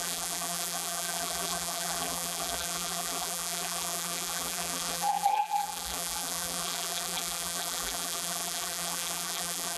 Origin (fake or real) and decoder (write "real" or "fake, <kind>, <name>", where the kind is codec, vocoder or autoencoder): fake, vocoder, BigVGAN v2